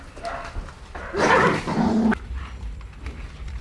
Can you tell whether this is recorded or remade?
recorded